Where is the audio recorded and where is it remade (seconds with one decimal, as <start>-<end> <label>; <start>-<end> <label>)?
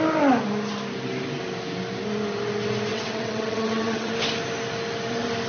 0.0-2.9 recorded; 2.9-4.1 remade; 4.1-5.5 recorded